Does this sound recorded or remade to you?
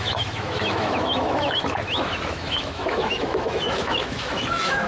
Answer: remade